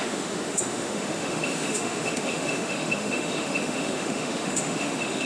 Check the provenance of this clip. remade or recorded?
remade